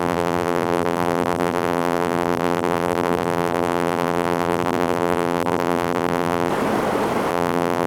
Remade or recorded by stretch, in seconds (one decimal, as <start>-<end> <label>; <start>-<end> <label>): 0.0-6.5 remade; 6.5-7.3 recorded; 7.3-7.9 remade